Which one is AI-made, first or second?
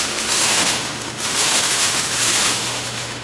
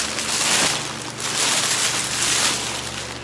first